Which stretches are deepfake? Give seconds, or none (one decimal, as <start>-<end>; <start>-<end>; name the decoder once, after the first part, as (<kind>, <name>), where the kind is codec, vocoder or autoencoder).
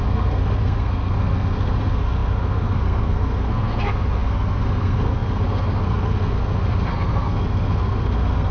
0.0-8.5 (codec, SNAC)